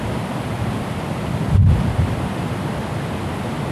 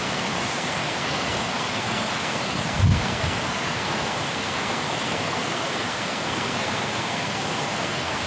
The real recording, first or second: first